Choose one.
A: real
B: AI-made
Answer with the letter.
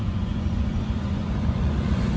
B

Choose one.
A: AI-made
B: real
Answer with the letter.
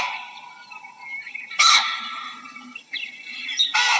B